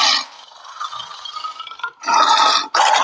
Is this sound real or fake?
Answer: real